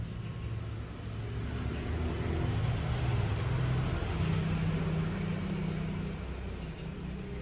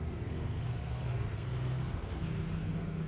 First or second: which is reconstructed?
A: second